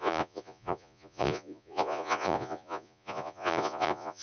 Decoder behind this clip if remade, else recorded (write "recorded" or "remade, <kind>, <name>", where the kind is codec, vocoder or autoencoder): remade, vocoder, Vocos